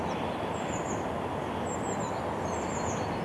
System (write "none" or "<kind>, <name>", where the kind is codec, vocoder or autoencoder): none